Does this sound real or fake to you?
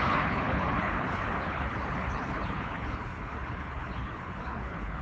fake